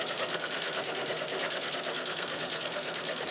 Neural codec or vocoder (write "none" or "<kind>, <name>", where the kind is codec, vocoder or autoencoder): codec, SNAC